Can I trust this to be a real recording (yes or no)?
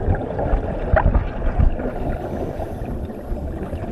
yes